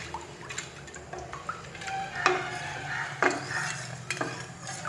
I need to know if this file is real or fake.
fake